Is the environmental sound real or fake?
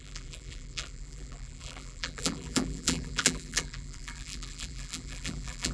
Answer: fake